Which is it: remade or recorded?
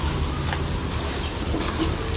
recorded